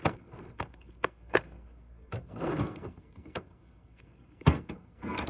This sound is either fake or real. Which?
fake